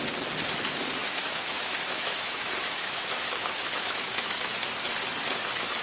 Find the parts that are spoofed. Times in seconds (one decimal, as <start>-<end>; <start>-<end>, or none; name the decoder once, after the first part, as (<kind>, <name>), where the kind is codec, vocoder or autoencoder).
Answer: 1.0-4.5 (autoencoder, DAC-VAE)